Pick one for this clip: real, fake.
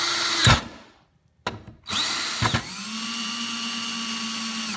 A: real